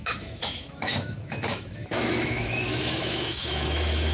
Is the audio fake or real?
fake